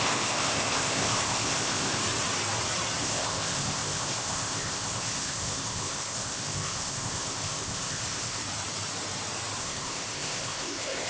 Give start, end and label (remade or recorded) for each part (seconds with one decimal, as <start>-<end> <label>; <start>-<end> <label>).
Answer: 0.0-2.0 remade; 2.0-3.0 recorded; 3.0-8.4 remade; 8.4-9.6 recorded; 9.6-11.1 remade